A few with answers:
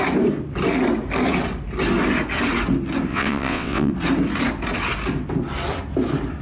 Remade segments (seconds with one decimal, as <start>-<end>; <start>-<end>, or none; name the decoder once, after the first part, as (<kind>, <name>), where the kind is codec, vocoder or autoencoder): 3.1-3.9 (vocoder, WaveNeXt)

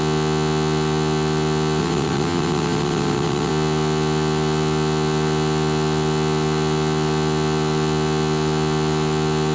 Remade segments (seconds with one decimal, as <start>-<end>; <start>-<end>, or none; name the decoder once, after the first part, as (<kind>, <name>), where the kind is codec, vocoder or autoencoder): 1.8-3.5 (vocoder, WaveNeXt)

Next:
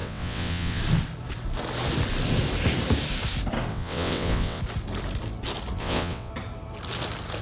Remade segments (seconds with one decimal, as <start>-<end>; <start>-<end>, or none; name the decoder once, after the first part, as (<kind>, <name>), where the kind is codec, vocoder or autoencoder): 0.0-0.8 (vocoder, WaveNeXt); 3.7-4.6; 5.8-6.3

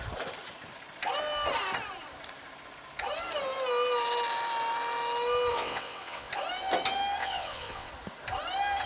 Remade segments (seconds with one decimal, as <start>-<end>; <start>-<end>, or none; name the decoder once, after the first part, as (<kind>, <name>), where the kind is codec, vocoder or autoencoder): 5.5-6.3 (vocoder, WaveNeXt); 7.2-7.9

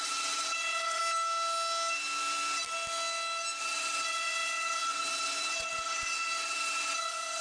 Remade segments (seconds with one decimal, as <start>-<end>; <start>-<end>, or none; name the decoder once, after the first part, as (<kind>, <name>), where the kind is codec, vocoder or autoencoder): 0.0-1.0 (vocoder, WaveNeXt); 3.6-7.4

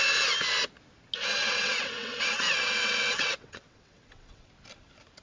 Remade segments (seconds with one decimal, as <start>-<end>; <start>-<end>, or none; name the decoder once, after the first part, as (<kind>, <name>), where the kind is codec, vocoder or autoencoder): 1.4-4.5 (vocoder, WaveNeXt)

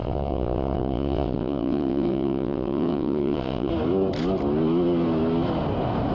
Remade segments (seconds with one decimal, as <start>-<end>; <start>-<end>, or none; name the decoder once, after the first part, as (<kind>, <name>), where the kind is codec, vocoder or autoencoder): 0.0-3.7 (vocoder, WaveNeXt)